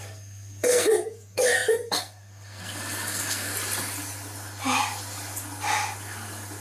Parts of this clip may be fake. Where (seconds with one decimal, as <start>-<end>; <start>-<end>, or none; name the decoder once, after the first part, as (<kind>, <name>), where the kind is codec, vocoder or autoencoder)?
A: 0.0-3.5 (codec, SNAC)